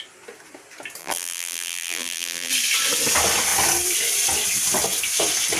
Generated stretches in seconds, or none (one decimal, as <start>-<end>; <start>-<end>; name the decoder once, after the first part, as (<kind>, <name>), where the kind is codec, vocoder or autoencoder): 1.0-2.5 (vocoder, BigVGAN v2)